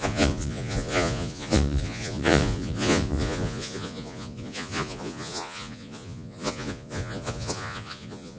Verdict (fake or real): fake